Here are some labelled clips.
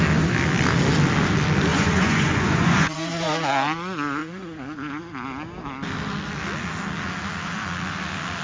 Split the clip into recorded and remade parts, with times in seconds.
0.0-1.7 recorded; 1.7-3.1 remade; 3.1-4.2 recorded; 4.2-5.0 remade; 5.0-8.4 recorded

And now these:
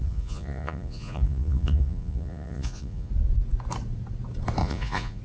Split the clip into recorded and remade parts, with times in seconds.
0.0-3.1 remade; 3.1-4.6 recorded; 4.6-5.2 remade

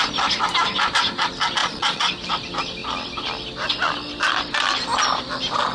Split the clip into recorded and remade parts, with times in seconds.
0.0-1.6 recorded; 1.6-2.1 remade; 2.1-5.7 recorded